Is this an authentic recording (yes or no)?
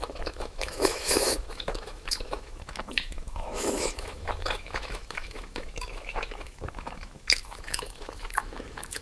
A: no